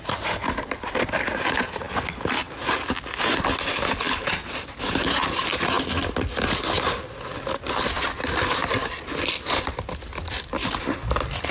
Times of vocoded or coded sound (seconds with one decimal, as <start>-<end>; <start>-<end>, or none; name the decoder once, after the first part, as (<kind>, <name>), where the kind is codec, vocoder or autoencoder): none